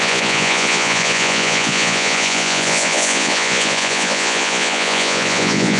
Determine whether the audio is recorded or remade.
remade